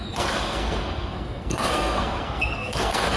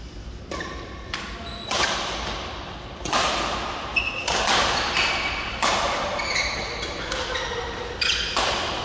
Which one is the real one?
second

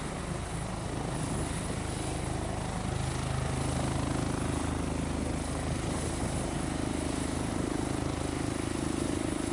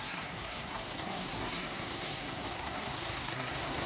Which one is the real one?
first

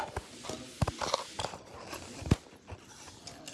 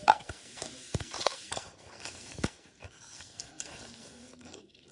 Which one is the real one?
first